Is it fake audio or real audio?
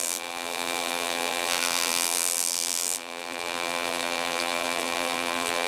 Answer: fake